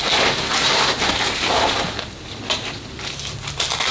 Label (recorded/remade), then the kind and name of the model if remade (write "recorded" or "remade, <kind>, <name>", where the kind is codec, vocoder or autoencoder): recorded